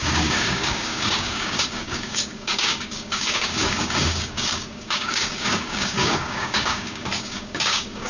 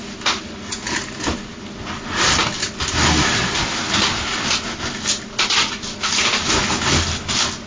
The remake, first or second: first